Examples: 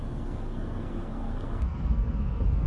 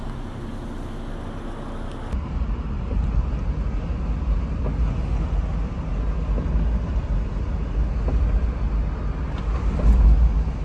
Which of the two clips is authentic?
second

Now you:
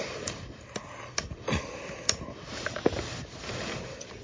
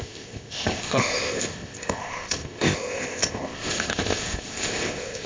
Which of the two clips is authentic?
first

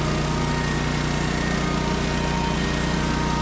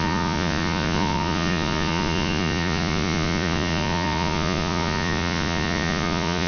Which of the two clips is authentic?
first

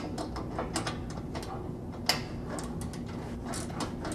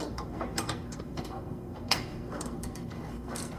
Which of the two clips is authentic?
first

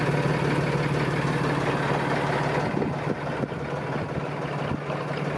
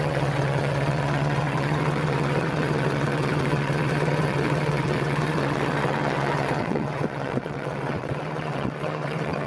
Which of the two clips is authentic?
first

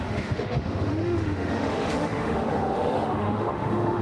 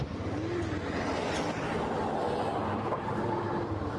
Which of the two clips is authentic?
second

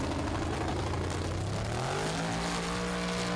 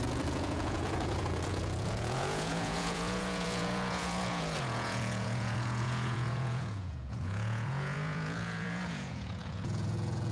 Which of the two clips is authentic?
first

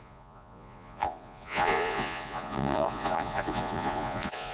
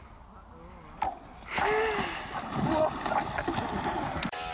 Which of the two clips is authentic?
second